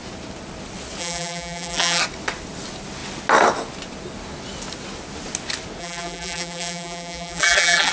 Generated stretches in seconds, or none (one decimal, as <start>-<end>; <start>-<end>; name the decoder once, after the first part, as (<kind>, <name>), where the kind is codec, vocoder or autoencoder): 1.0-2.0 (vocoder, BigVGAN v2); 5.8-7.9